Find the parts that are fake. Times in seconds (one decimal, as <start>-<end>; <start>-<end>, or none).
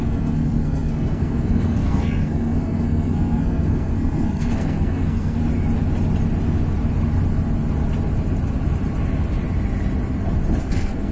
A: 0.0-5.4; 10.6-11.1